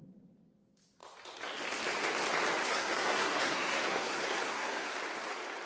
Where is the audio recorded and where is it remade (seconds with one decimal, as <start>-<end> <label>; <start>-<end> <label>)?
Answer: 0.0-2.6 recorded; 2.6-4.9 remade; 4.9-5.7 recorded